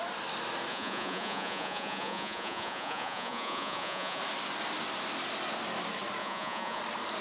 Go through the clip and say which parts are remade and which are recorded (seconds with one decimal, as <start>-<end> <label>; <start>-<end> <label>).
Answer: 0.0-0.7 recorded; 0.7-4.2 remade; 4.2-6.2 recorded; 6.2-6.8 remade; 6.8-7.2 recorded